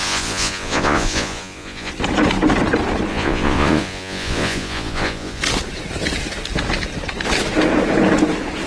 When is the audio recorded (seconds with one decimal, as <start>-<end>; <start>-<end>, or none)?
1.9-3.1; 5.4-8.7